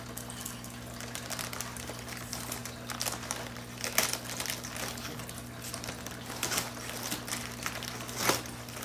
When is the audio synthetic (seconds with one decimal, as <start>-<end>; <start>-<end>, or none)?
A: none